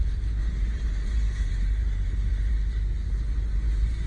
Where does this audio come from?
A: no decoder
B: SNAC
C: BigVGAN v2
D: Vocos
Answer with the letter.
C